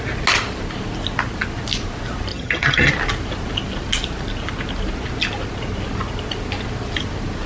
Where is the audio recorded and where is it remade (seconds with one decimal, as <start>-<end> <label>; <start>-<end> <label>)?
0.0-2.3 recorded; 2.3-2.9 remade; 2.9-7.5 recorded